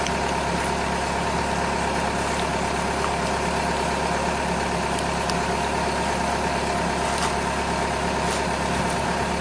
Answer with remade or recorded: recorded